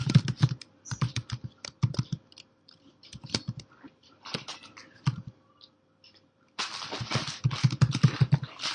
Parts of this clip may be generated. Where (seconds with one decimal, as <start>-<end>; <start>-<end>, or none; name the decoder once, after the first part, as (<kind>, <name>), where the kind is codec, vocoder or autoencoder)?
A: 0.6-8.7 (vocoder, BigVGAN v2)

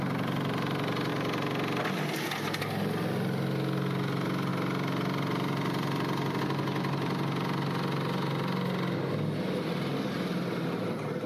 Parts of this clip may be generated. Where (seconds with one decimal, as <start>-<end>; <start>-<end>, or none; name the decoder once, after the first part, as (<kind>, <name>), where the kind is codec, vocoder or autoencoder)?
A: none

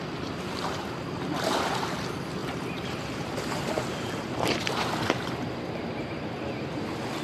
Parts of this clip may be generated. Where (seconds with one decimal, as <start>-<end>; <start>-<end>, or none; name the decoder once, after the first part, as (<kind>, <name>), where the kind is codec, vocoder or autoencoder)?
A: 2.4-4.9 (vocoder, BigVGAN v2)